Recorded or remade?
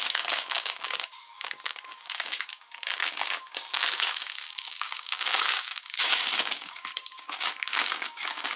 remade